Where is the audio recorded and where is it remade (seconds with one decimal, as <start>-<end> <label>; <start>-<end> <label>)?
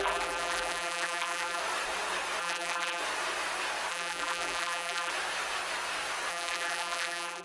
0.0-1.6 remade; 1.6-2.4 recorded; 2.4-3.0 remade; 3.0-3.9 recorded; 3.9-5.1 remade; 5.1-6.3 recorded; 6.3-7.4 remade